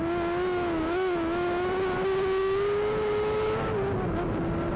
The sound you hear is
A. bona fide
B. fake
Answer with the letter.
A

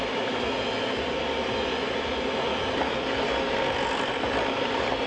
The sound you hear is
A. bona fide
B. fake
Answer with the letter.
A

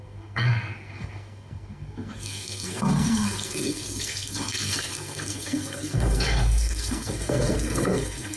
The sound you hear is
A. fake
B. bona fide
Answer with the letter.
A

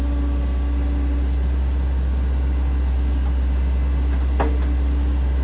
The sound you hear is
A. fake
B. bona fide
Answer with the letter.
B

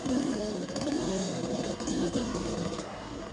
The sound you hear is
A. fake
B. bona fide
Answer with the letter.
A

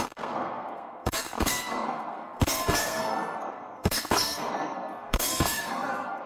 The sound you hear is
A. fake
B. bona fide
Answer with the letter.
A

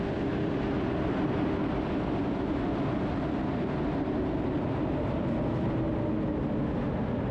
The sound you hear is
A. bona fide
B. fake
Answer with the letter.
A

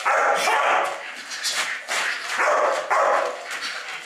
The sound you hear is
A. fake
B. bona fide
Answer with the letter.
B